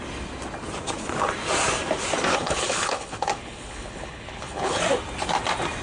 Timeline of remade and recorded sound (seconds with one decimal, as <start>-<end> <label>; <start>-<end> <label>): 0.0-2.3 recorded; 2.3-4.8 remade; 4.8-5.8 recorded